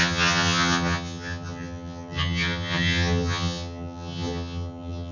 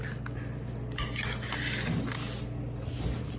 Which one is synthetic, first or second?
first